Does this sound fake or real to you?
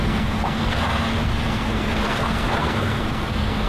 fake